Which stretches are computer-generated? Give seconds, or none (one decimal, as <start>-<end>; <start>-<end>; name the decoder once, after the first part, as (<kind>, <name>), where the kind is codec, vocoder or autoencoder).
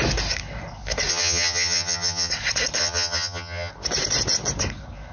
1.1-2.3 (vocoder, HiFi-GAN); 2.8-3.7